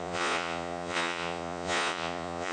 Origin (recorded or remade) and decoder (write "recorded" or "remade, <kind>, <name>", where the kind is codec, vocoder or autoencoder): remade, vocoder, Vocos